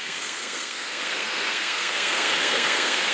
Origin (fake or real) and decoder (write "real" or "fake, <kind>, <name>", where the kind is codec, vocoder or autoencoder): fake, codec, SNAC